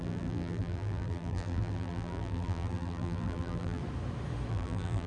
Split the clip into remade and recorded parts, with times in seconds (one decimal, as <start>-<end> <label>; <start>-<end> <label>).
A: 0.0-3.8 remade; 3.8-4.5 recorded; 4.5-5.1 remade